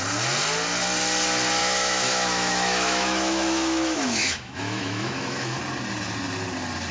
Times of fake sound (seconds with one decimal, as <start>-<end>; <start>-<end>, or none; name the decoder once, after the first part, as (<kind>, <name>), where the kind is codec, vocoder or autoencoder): 1.6-5.6 (autoencoder, DAC-VAE)